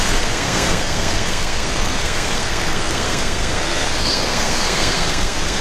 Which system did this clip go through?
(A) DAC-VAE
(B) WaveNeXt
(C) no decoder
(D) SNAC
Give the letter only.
D